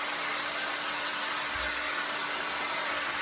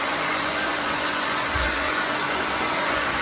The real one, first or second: first